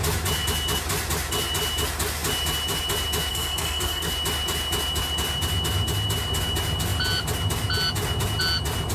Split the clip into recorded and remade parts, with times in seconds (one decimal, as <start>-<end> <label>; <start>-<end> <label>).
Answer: 0.0-3.3 recorded; 3.3-4.1 remade; 4.1-8.9 recorded